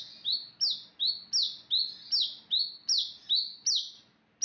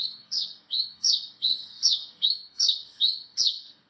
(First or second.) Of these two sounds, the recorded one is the first